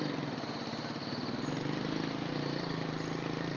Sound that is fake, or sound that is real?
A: real